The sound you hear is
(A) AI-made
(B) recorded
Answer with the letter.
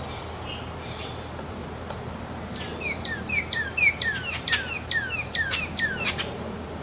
B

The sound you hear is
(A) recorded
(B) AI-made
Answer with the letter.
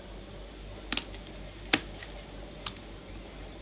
A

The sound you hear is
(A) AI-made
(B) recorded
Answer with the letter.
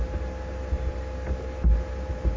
B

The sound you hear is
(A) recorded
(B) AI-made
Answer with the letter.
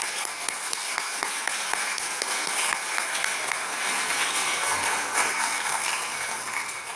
B